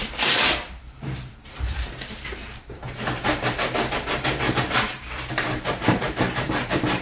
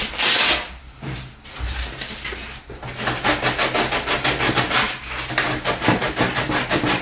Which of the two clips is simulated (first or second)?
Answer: first